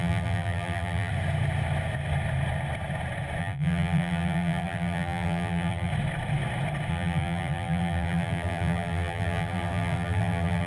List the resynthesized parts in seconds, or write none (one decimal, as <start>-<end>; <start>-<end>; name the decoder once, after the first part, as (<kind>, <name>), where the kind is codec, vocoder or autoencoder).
0.0-1.1 (vocoder, BigVGAN v2); 3.4-5.9; 6.9-10.7